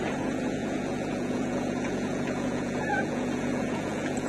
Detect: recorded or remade remade